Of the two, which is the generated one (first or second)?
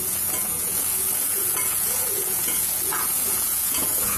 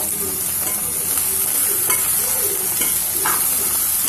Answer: first